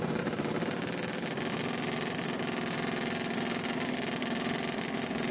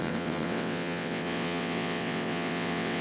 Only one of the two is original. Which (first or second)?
first